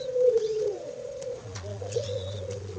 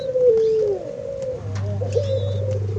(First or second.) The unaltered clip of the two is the second